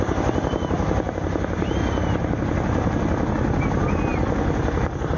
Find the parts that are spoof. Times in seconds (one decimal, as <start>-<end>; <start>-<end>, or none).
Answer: none